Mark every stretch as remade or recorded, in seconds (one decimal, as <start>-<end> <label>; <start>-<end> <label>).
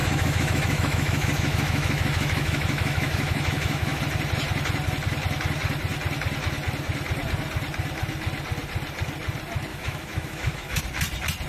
0.0-4.0 remade; 4.0-9.7 recorded; 9.7-10.8 remade; 10.8-11.5 recorded